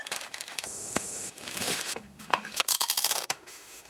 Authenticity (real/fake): fake